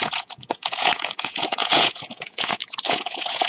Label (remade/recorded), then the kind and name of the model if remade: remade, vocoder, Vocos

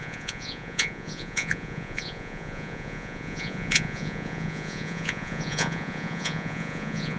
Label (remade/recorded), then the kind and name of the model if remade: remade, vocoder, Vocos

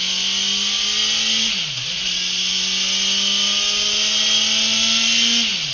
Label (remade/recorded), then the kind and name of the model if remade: recorded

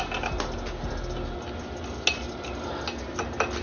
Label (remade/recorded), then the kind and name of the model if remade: recorded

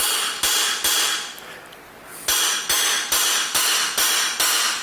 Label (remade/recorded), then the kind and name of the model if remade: recorded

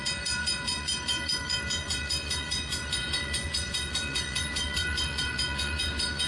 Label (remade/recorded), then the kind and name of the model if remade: remade, vocoder, Vocos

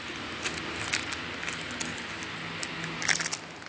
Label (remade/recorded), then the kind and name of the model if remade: recorded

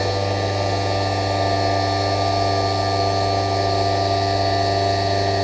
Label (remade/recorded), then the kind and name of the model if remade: recorded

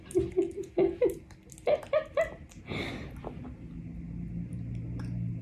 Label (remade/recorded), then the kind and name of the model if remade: recorded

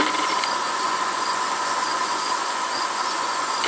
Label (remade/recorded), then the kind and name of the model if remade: remade, vocoder, Vocos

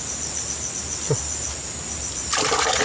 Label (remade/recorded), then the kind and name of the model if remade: recorded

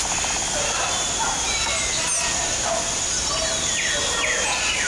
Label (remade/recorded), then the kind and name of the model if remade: recorded